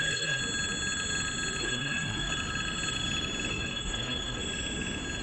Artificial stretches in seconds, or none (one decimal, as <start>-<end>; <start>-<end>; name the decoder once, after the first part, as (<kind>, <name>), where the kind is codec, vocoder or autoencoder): 0.0-0.4 (codec, SNAC); 1.6-2.3; 3.5-4.4